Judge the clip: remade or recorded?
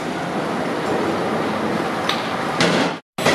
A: recorded